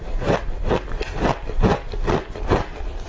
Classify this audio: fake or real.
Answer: real